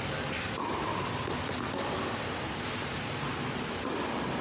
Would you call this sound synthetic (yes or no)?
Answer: no